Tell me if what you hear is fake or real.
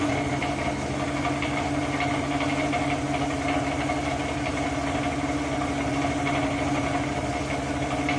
real